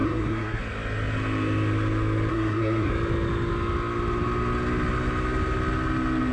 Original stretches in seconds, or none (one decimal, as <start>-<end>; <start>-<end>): 0.6-2.3; 2.9-6.3